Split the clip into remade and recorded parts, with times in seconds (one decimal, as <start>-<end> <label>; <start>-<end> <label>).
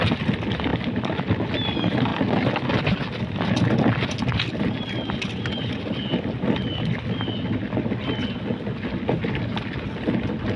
0.0-10.6 recorded